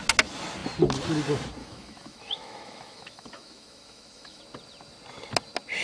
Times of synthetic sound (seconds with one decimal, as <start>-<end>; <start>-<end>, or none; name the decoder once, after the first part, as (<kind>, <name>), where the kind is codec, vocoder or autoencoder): 1.6-4.4 (autoencoder, DAC-VAE)